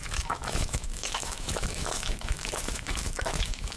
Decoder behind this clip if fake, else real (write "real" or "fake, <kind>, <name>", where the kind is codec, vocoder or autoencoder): fake, autoencoder, DAC-VAE